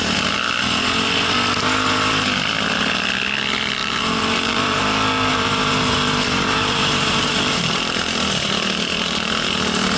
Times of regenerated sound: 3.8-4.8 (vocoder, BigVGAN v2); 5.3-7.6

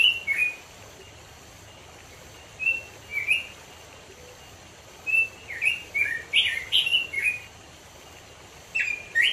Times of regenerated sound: none

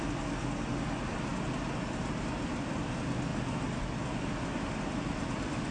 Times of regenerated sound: none

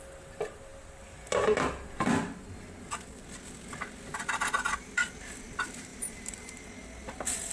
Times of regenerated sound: 5.9-6.6 (vocoder, BigVGAN v2)

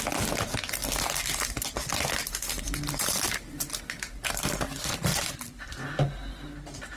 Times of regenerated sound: 5.1-5.8 (vocoder, BigVGAN v2)

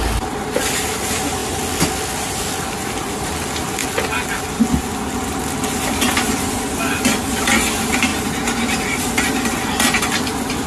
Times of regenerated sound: 0.0-1.4 (vocoder, BigVGAN v2); 2.2-3.8; 7.7-8.1; 10.1-10.7